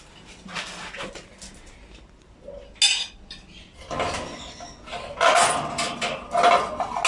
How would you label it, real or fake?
real